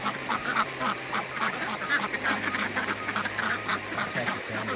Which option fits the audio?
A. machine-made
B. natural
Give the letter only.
A